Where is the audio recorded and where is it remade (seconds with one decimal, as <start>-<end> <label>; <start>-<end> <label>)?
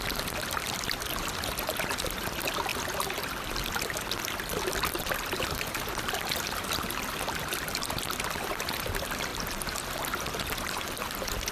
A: 0.0-2.7 remade; 2.7-4.4 recorded; 4.4-9.3 remade; 9.3-10.4 recorded; 10.4-11.5 remade